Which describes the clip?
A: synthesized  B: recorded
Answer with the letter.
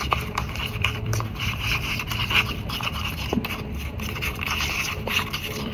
A